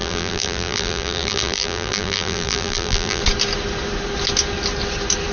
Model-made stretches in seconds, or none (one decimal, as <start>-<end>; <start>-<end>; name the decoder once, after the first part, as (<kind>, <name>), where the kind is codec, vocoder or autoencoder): 0.0-3.2 (vocoder, BigVGAN v2)

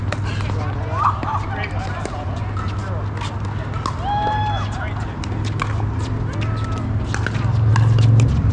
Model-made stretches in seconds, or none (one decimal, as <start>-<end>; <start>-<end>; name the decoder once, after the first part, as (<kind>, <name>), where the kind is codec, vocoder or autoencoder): none

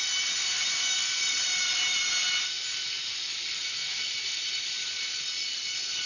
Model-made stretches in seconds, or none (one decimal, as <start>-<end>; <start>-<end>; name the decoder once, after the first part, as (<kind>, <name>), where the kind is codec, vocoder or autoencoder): 1.0-2.0 (vocoder, BigVGAN v2); 3.8-5.2

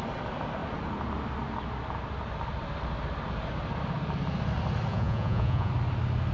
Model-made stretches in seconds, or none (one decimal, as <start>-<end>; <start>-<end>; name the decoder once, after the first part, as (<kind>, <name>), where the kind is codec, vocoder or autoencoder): 4.9-5.7 (vocoder, Vocos)